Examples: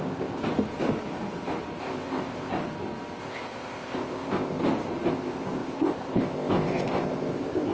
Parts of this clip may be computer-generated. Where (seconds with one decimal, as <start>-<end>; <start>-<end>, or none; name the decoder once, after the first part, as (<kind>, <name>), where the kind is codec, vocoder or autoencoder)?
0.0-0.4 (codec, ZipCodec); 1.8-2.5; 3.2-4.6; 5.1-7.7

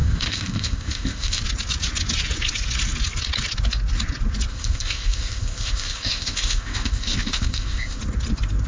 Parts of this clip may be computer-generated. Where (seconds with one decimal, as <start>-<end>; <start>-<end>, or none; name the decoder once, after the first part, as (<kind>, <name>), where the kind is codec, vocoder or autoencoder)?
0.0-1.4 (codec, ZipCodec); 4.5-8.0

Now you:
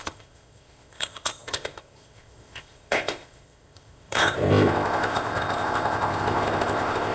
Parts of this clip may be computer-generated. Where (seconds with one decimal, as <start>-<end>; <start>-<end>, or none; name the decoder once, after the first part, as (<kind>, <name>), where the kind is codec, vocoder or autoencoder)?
0.0-7.1 (codec, ZipCodec)

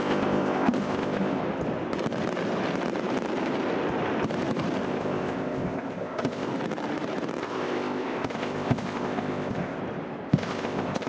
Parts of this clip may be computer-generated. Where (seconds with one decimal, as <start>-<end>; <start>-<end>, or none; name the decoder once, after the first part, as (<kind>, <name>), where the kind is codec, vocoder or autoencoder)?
0.0-1.4 (codec, ZipCodec); 4.8-6.5; 7.4-9.8; 10.3-11.1

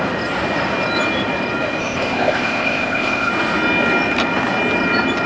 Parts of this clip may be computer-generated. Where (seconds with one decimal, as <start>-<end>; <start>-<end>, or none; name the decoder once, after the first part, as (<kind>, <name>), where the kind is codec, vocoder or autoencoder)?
1.8-3.3 (codec, ZipCodec)